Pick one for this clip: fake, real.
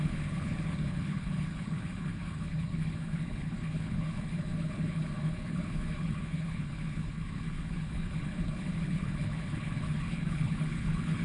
fake